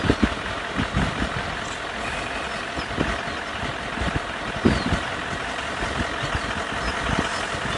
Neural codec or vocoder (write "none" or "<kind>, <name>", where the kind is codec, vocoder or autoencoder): none